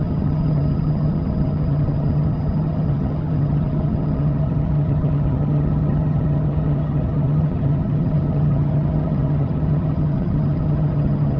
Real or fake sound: fake